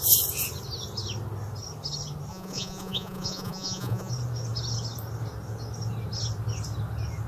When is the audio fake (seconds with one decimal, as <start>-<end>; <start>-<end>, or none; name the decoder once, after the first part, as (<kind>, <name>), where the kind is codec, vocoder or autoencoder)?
2.3-4.1 (vocoder, Vocos)